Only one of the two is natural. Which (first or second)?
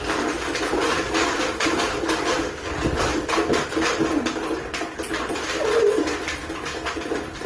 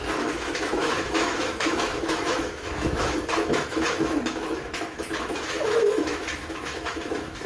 first